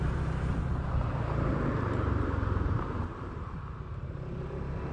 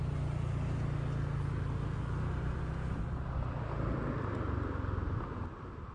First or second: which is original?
second